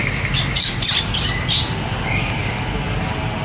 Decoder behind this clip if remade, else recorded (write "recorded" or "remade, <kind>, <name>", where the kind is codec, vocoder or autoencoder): recorded